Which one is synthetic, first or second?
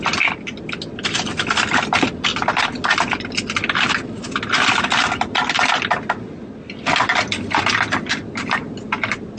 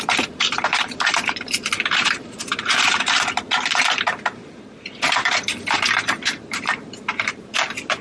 second